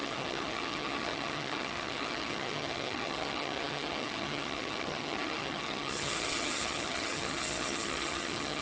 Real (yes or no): no